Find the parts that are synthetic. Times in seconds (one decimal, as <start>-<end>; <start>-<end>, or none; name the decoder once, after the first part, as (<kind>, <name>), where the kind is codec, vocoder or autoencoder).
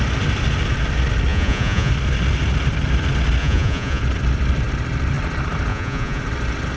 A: 1.3-1.9 (vocoder, Vocos); 3.4-4.0; 5.7-6.2